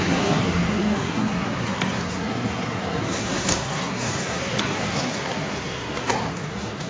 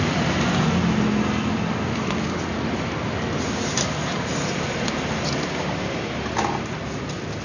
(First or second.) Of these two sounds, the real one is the second